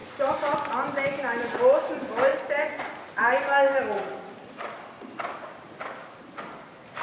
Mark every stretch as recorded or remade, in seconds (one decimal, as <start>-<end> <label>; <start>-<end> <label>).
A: 0.0-7.0 recorded